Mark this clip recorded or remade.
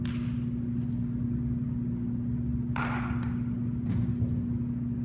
recorded